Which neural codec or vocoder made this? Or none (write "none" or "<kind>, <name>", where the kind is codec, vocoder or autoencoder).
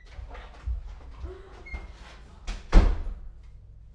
none